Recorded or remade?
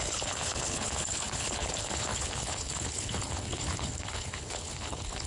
remade